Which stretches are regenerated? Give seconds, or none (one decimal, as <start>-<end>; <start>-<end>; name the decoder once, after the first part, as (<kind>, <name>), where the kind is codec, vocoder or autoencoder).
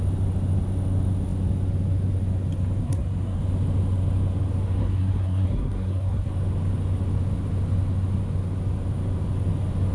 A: 2.8-3.4 (codec, SNAC); 4.8-6.3